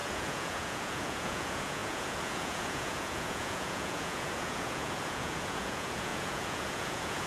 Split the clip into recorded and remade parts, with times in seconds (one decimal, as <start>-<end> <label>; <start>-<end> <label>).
0.0-7.3 remade